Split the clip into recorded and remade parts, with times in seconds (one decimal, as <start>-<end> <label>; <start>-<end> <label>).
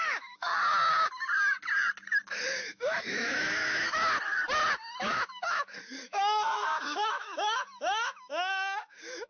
0.0-0.5 remade; 0.5-2.3 recorded; 2.3-4.0 remade; 4.0-5.0 recorded; 5.0-9.3 remade